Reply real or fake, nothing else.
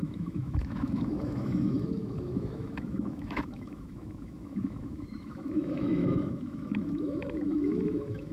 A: fake